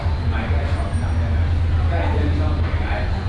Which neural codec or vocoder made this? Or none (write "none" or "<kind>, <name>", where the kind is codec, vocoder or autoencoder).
none